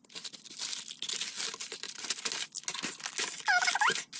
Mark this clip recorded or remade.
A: recorded